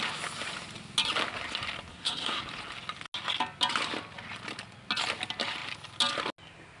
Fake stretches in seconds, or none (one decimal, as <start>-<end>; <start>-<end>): 1.9-2.4